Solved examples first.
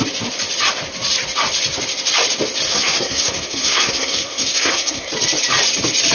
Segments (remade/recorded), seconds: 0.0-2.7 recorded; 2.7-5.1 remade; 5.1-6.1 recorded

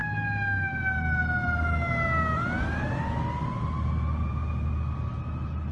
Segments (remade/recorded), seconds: 0.0-5.7 recorded

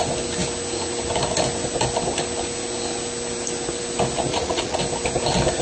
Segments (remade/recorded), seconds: 0.0-4.3 recorded; 4.3-4.8 remade; 4.8-5.6 recorded

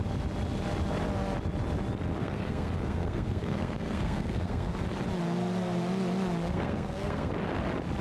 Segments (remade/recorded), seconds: 0.0-2.2 recorded; 2.2-4.7 remade; 4.7-6.4 recorded; 6.4-7.3 remade; 7.3-8.0 recorded

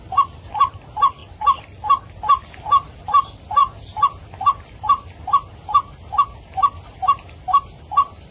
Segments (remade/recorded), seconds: 0.0-8.3 recorded

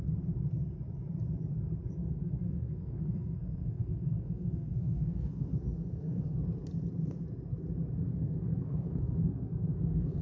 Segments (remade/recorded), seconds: 0.0-2.0 recorded; 2.0-6.4 remade; 6.4-8.1 recorded; 8.1-10.2 remade

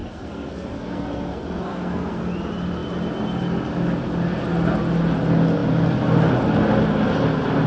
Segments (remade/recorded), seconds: 0.0-2.2 remade; 2.2-7.7 recorded